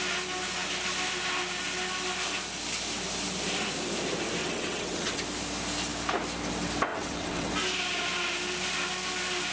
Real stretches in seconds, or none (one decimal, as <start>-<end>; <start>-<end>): 0.0-4.4; 5.2-6.9; 7.5-9.5

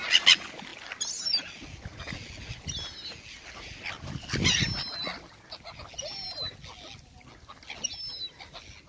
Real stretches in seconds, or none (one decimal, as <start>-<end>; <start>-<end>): 0.0-8.9